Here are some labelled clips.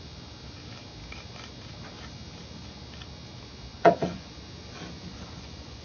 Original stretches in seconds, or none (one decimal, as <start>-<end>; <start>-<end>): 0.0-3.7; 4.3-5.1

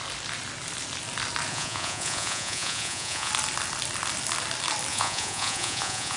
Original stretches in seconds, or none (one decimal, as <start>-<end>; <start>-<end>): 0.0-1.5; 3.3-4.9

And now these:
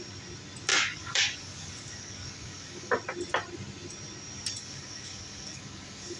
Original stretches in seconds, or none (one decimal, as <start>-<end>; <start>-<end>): 0.0-0.7; 2.9-4.6

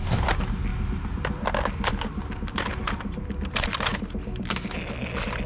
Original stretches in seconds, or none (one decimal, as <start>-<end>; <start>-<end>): 0.0-5.5

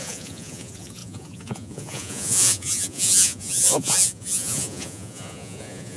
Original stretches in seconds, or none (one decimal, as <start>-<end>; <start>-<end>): none

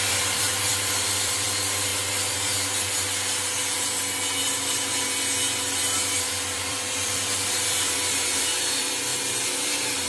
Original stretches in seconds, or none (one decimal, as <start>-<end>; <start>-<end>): 1.9-6.2; 9.1-10.1